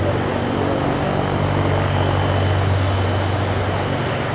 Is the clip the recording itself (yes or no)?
yes